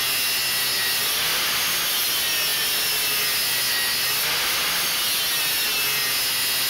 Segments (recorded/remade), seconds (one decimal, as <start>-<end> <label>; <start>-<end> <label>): 0.0-6.7 recorded